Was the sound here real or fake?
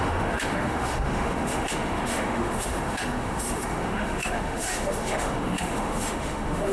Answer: fake